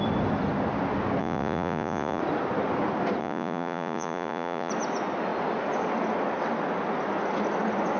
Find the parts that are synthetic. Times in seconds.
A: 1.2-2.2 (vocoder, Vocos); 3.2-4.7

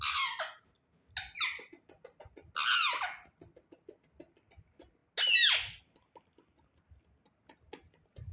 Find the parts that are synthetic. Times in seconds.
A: none

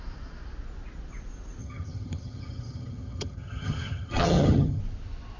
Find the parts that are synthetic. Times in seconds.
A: 1.6-4.8 (vocoder, HiFi-GAN)

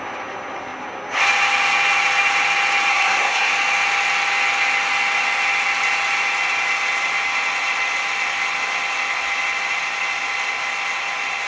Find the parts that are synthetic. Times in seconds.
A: 2.9-3.5 (codec, SNAC)